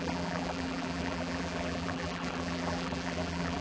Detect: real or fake fake